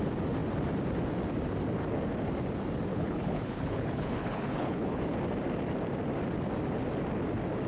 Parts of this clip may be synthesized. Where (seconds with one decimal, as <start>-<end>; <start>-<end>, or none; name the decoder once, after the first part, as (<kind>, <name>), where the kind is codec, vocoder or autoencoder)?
2.9-5.0 (codec, HILCodec)